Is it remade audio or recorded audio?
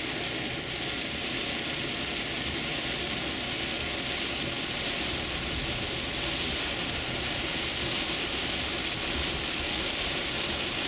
recorded